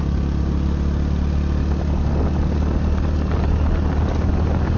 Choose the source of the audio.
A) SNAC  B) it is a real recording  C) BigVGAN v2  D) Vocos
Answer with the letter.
B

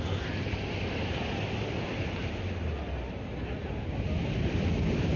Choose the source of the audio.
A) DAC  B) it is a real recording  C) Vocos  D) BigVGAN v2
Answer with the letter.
B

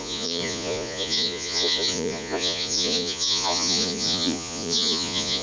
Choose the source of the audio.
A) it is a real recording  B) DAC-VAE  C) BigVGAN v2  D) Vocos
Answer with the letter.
D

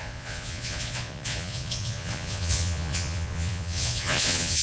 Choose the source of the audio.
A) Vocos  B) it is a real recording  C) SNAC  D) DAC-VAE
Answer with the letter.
A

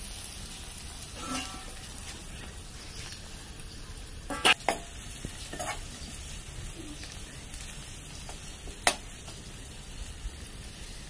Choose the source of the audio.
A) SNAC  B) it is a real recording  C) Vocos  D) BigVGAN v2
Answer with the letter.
B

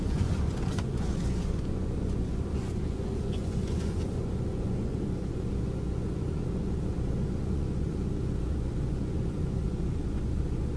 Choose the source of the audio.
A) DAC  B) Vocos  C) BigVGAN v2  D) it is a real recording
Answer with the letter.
B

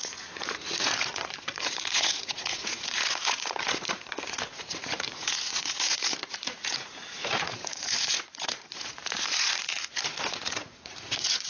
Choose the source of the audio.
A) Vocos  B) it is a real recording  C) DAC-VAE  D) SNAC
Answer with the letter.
A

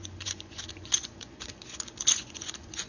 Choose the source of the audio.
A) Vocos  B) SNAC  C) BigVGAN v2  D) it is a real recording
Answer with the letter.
A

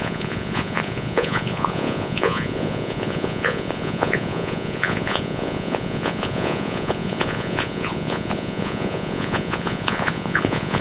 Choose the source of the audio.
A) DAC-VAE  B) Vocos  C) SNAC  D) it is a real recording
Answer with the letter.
B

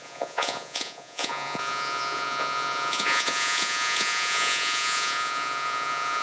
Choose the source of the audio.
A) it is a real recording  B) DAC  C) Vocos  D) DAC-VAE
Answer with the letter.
C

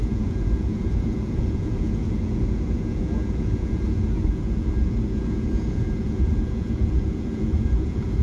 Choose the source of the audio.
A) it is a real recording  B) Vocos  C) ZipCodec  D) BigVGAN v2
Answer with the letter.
B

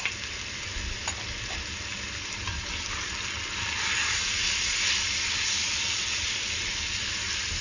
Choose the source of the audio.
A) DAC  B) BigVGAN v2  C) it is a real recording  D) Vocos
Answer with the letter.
C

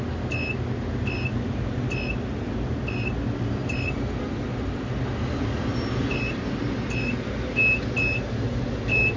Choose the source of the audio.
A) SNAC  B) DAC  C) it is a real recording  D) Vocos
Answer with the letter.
C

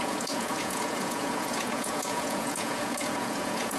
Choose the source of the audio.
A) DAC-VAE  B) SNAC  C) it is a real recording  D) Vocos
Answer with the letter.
D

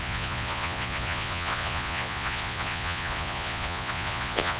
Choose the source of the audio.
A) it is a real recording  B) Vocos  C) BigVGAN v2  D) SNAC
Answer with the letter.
B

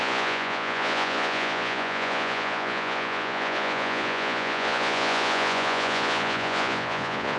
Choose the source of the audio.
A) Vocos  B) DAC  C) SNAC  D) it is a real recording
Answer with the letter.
A